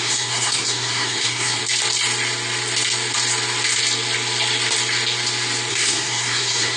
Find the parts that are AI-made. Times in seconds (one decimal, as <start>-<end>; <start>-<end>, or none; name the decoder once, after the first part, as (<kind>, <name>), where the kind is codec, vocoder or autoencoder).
0.0-1.6 (codec, SNAC); 5.7-6.8